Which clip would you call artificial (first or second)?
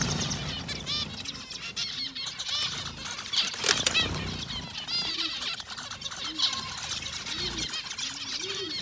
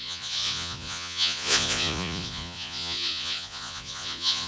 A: second